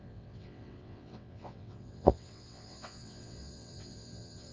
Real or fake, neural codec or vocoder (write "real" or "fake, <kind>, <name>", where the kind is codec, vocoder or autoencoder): fake, vocoder, WaveNeXt